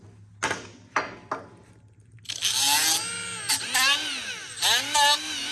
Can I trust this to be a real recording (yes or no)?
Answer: yes